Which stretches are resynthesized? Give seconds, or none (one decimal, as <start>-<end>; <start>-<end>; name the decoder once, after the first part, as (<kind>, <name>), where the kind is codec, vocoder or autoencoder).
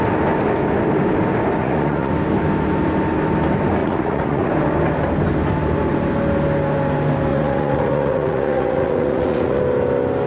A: 1.6-2.1 (vocoder, Vocos); 3.8-4.5; 7.3-9.6